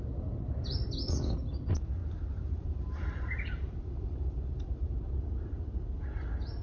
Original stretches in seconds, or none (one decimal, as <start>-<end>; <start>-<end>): 0.0-2.0; 6.0-6.6